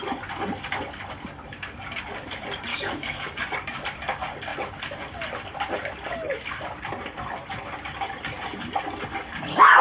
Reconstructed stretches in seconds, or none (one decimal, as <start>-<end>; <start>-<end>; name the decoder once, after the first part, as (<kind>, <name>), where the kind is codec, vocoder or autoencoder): 2.7-3.4 (autoencoder, DAC-VAE)